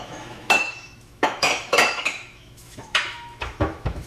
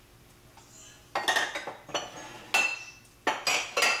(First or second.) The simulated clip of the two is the first